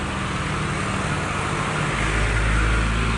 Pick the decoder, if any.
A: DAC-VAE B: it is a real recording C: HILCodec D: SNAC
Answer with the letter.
B